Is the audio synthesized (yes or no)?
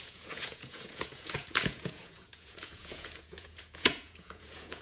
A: yes